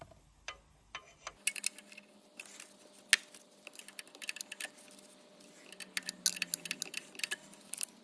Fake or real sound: real